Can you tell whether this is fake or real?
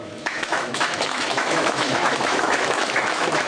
fake